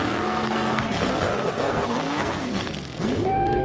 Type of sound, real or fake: fake